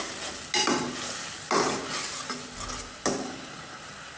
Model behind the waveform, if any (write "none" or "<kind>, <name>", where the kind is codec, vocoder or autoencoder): none